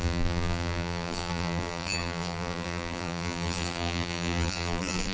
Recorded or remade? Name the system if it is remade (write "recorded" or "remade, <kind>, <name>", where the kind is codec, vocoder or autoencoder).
remade, vocoder, BigVGAN v2